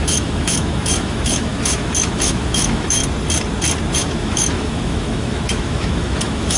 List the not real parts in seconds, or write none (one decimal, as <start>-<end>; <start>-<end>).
0.0-3.0; 3.9-6.6